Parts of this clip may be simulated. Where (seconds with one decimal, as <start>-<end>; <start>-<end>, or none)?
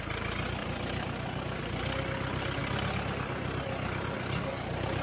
0.6-1.6